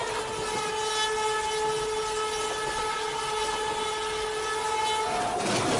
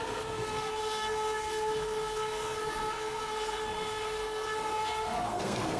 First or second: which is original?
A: first